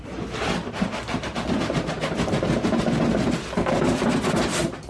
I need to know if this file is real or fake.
real